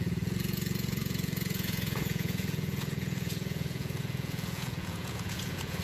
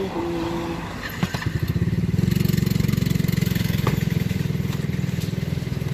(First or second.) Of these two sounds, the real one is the second